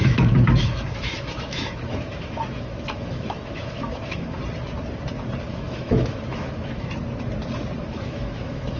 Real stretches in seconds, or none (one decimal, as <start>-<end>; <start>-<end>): 4.4-5.5; 6.9-7.8